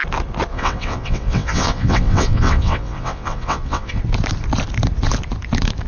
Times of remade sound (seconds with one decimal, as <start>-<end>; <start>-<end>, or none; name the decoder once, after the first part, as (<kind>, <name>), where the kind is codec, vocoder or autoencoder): 0.5-4.0 (vocoder, WaveNeXt)